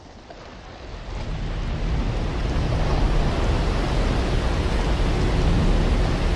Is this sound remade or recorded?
recorded